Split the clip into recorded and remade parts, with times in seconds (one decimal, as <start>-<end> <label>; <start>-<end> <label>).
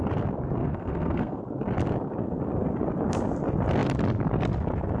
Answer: 0.0-0.6 recorded; 0.6-1.4 remade; 1.4-5.0 recorded